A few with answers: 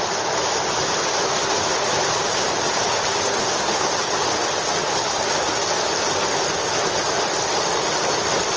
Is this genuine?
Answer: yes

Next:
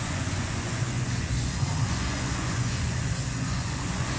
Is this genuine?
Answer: no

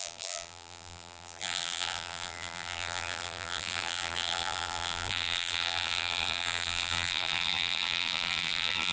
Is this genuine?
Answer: no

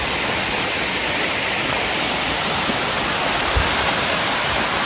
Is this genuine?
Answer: no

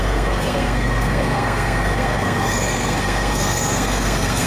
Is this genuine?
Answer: no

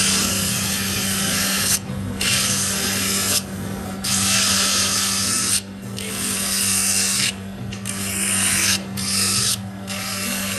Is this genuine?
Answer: no